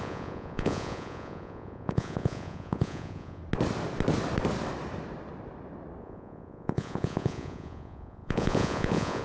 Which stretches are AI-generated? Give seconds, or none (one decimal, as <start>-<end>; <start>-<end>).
0.0-3.4; 6.0-9.2